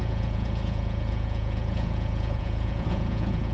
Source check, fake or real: fake